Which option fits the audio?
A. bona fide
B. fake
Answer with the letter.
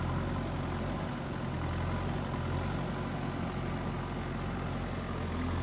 A